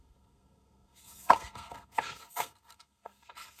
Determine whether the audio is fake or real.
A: fake